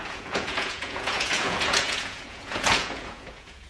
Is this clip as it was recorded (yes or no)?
no